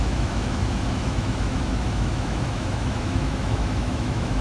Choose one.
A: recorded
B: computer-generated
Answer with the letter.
B